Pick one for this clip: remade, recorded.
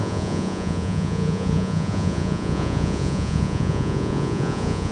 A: remade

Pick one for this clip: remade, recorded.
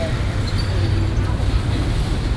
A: recorded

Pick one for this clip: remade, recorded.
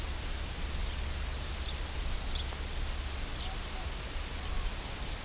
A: recorded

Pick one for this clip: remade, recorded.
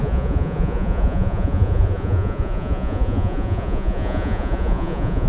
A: remade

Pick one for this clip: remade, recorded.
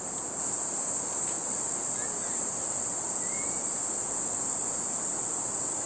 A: recorded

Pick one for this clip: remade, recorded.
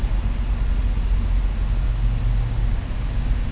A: recorded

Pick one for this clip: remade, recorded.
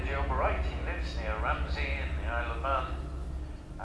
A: recorded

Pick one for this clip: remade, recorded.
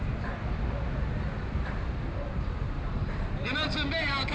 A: recorded